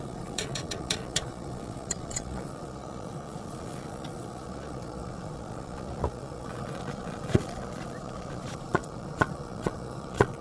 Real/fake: fake